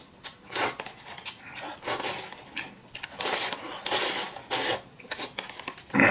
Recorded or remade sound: recorded